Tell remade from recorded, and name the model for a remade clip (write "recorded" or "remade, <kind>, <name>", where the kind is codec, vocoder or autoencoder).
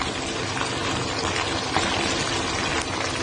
recorded